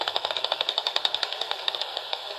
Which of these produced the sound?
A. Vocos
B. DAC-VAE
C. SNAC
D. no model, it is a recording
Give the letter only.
C